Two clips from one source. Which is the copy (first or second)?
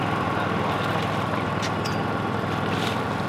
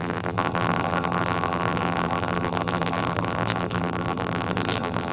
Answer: second